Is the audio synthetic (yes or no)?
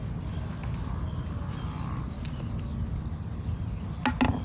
no